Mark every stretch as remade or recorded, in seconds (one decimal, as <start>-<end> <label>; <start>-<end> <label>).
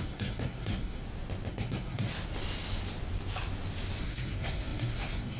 0.0-1.0 remade; 1.0-1.5 recorded; 1.5-2.1 remade; 2.1-4.0 recorded; 4.0-5.4 remade